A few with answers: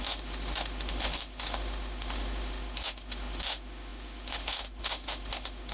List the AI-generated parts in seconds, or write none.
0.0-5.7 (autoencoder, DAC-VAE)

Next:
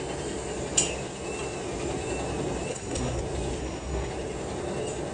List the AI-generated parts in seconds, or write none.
2.7-3.2 (codec, SNAC); 3.6-4.1

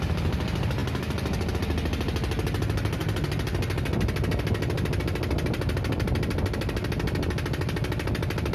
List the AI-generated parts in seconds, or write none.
none

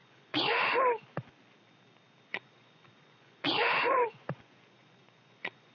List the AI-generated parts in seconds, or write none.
0.0-0.8 (vocoder, Vocos); 2.3-5.7

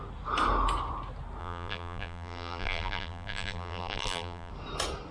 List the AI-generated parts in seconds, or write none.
1.4-4.5 (vocoder, BigVGAN v2)